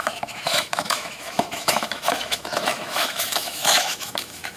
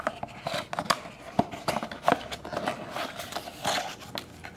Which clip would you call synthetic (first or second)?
first